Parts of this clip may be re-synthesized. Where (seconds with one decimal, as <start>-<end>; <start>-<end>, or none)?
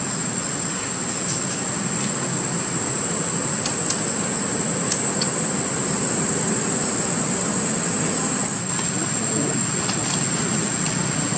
none